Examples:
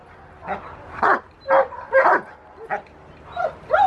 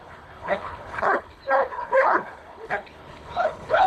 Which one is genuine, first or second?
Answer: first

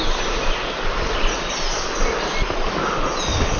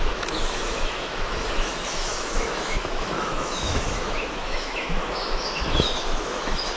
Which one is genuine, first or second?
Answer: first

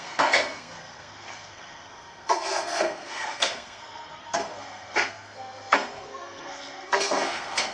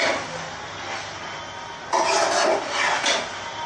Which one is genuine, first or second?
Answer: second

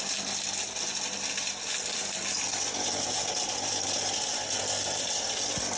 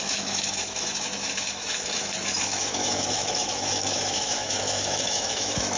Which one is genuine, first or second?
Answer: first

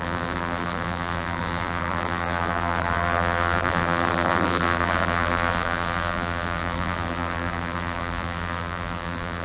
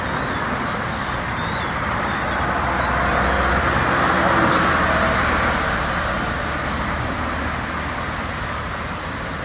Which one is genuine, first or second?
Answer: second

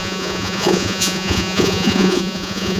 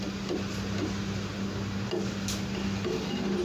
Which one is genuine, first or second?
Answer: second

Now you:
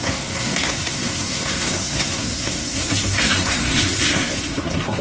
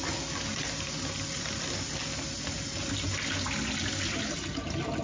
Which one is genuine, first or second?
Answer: second